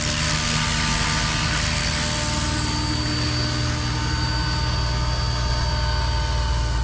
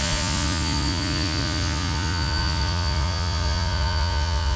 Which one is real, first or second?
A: first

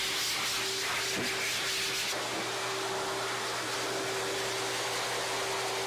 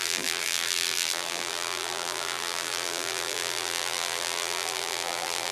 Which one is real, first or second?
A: first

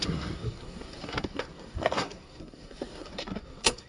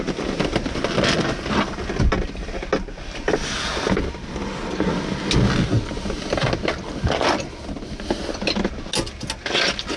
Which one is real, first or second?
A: second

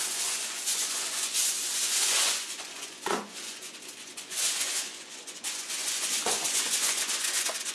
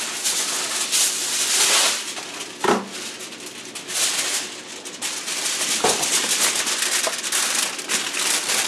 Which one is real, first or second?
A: second